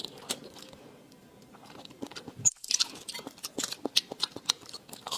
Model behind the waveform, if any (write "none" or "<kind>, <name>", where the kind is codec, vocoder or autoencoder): none